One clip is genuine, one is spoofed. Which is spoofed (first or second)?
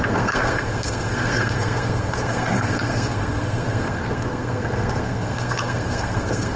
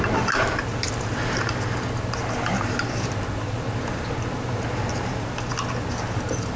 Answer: first